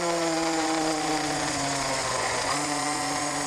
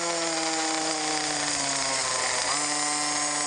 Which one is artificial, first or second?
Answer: first